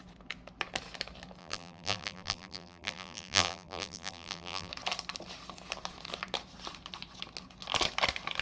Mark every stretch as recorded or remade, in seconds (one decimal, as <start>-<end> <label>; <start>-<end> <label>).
0.0-1.4 recorded; 1.4-4.7 remade; 4.7-8.4 recorded